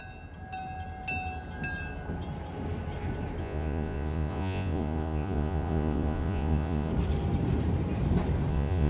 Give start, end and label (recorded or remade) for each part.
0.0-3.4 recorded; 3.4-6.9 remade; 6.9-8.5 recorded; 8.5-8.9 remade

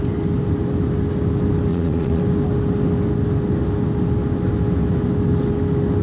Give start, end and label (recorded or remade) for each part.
0.0-1.7 recorded; 1.7-2.2 remade; 2.2-6.0 recorded